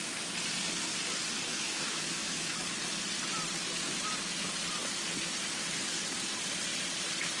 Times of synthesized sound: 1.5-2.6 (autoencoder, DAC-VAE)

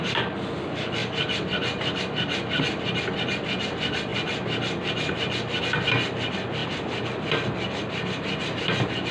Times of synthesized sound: none

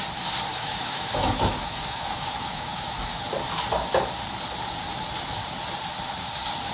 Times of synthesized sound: 0.5-3.2 (autoencoder, DAC-VAE)

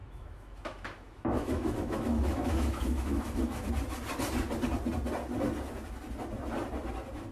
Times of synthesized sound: 0.0-3.7 (autoencoder, DAC-VAE)

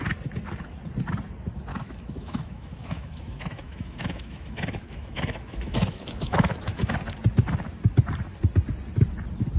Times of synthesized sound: 1.7-6.9 (autoencoder, DAC-VAE)